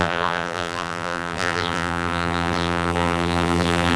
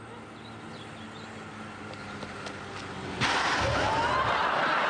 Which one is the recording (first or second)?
second